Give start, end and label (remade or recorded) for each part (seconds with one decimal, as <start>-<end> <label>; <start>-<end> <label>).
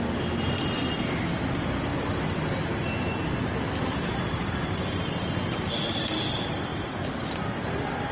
0.0-8.1 recorded